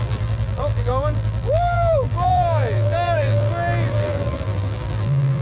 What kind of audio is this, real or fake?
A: fake